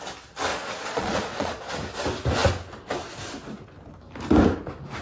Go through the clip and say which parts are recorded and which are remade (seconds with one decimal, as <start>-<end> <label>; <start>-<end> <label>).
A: 0.0-0.5 recorded; 0.5-1.7 remade; 1.7-5.0 recorded